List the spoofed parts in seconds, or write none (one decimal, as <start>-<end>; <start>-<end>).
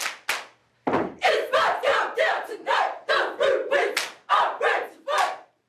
0.6-1.3; 1.9-3.1